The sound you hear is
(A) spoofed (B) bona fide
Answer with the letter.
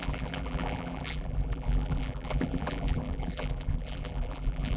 A